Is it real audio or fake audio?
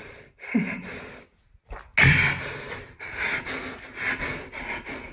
real